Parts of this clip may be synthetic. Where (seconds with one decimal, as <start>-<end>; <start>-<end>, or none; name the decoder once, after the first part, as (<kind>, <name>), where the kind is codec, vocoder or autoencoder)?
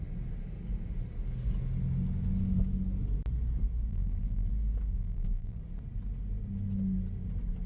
3.9-4.5 (vocoder, BigVGAN v2); 4.9-5.6